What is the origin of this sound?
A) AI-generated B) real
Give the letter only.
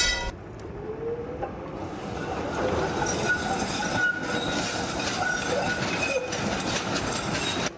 B